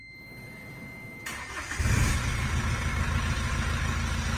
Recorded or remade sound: recorded